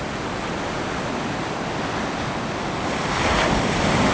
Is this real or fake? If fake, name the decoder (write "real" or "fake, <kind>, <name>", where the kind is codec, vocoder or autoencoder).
real